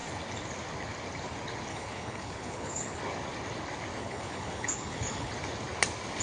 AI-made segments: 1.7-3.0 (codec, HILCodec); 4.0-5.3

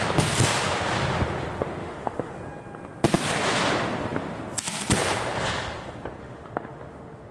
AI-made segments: 1.8-2.3 (autoencoder, DAC-VAE); 6.2-7.3

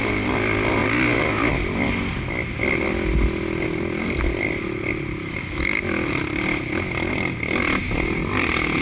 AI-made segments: none